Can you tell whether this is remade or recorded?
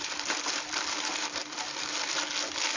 remade